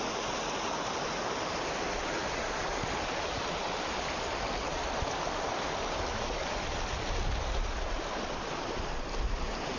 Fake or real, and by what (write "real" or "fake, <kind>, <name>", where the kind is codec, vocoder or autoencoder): real